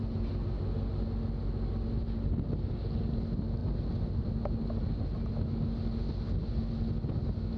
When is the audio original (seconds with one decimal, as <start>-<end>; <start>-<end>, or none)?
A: 0.0-7.6